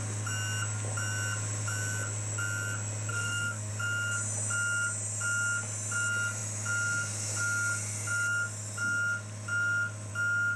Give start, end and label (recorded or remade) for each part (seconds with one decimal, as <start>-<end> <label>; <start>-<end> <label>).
0.0-3.1 recorded; 3.1-3.7 remade; 3.7-10.6 recorded